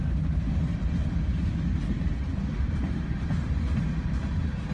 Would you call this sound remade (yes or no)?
no